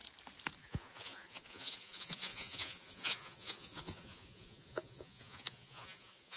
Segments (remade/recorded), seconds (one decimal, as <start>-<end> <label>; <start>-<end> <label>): 0.0-0.6 recorded; 0.6-6.4 remade